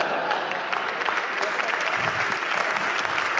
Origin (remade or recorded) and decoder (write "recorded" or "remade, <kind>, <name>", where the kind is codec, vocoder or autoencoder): recorded